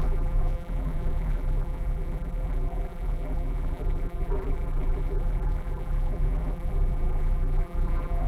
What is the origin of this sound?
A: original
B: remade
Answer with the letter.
B